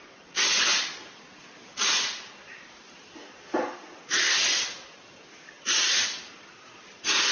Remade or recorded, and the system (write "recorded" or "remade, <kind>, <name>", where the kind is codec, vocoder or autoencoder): recorded